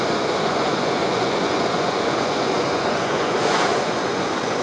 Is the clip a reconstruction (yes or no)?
yes